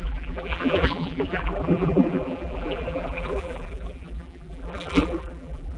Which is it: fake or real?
fake